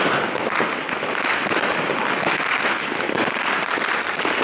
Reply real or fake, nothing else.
real